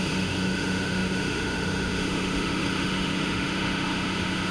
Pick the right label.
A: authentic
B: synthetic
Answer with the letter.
B